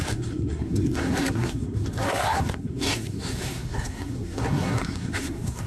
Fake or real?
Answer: fake